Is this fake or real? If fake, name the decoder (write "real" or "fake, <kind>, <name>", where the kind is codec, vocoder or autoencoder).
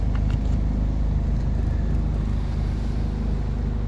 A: real